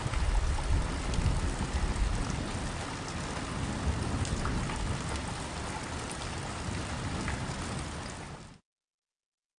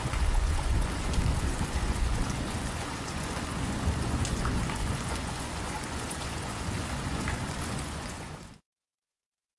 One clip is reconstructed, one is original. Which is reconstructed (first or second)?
second